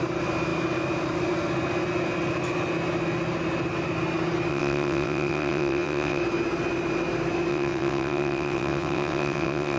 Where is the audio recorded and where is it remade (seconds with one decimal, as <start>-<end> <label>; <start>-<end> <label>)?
0.0-4.5 recorded; 4.5-6.2 remade; 6.2-7.5 recorded; 7.5-9.8 remade